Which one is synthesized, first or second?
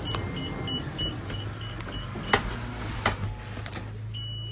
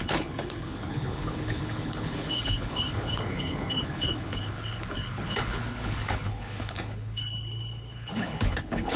second